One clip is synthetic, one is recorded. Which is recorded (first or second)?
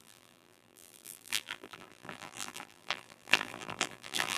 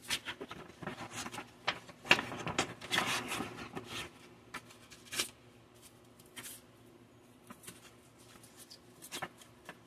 second